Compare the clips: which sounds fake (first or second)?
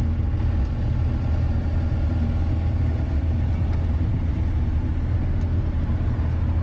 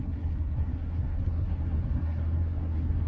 second